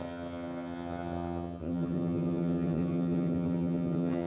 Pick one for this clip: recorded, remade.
remade